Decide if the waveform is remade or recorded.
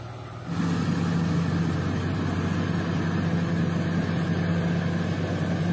recorded